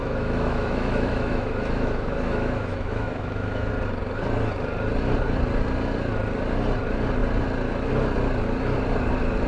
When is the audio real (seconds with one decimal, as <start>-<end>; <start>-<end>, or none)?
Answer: 3.7-9.5

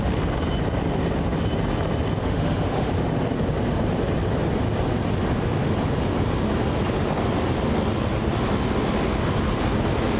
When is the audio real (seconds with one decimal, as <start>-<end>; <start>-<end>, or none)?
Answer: 0.0-2.2; 2.9-10.2